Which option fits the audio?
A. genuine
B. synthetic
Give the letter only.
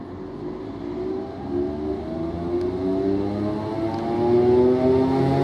A